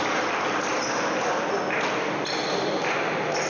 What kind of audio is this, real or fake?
real